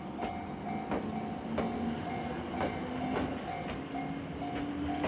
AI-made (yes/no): no